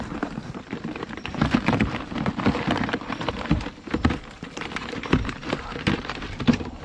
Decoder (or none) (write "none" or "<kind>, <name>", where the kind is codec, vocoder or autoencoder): vocoder, BigVGAN v2